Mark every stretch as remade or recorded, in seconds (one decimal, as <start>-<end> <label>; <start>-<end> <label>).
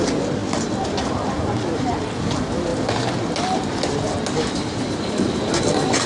0.0-6.1 recorded